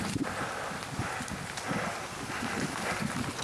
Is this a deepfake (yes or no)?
no